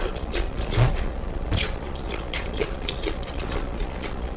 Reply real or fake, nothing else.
fake